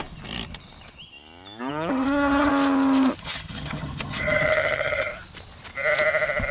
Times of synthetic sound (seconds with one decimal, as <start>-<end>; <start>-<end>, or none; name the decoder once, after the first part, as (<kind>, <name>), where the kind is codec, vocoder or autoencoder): 1.7-2.5 (vocoder, HiFi-GAN); 3.2-5.1